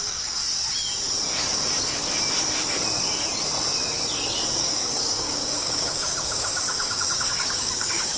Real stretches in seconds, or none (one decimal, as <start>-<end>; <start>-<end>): 0.4-4.5